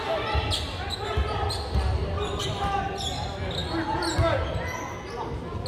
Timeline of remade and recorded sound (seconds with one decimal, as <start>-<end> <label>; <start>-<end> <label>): 0.0-2.0 recorded; 2.0-2.8 remade; 2.8-5.7 recorded